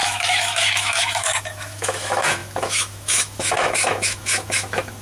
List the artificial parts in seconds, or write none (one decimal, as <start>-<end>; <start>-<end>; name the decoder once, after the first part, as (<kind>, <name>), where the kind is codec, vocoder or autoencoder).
0.0-5.0 (autoencoder, DAC-VAE)